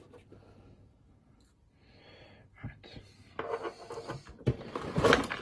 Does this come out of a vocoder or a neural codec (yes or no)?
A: no